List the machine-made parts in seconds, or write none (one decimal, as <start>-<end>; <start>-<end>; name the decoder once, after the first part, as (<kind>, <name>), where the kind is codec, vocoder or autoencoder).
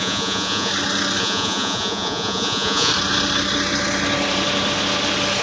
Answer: 0.0-0.7 (vocoder, Vocos); 1.2-2.9